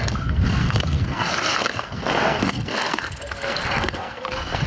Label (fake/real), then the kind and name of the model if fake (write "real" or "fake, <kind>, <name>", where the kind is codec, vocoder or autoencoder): fake, codec, SNAC